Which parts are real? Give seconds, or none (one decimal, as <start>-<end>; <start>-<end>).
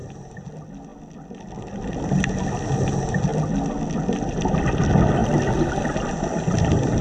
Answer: 0.0-7.0